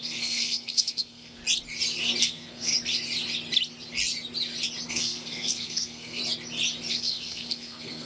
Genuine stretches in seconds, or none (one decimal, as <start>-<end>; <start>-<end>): 1.4-2.2; 2.7-4.9; 6.2-6.9